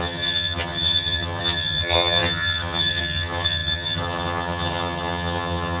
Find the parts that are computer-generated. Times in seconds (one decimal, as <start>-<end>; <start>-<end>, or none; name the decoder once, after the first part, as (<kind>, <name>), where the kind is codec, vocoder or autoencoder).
0.0-5.8 (vocoder, HiFi-GAN)